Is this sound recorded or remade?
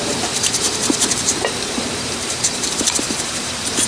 remade